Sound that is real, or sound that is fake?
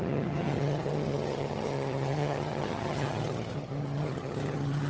fake